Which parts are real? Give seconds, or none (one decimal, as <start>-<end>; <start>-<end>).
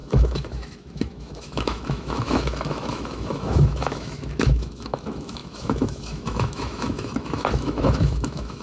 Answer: none